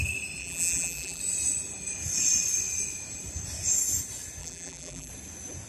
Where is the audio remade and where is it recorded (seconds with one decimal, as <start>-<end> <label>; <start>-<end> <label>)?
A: 0.0-0.4 recorded; 0.4-1.2 remade; 1.2-4.4 recorded; 4.4-5.1 remade; 5.1-5.7 recorded